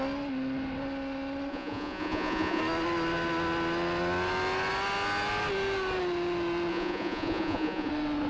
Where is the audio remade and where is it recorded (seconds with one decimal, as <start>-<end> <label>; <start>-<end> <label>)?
0.0-1.5 recorded; 1.5-2.6 remade; 2.6-6.7 recorded; 6.7-7.9 remade; 7.9-8.3 recorded